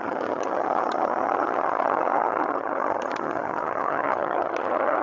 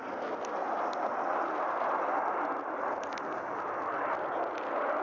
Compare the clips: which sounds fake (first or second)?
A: first